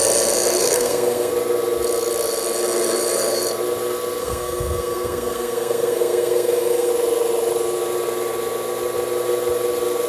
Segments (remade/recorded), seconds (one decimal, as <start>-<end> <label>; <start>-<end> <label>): 0.0-0.6 recorded; 0.6-1.3 remade; 1.3-4.2 recorded; 4.2-6.9 remade; 6.9-10.1 recorded